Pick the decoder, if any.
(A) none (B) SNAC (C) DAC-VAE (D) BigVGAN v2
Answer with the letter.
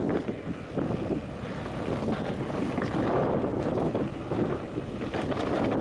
A